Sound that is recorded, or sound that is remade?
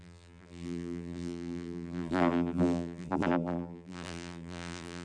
remade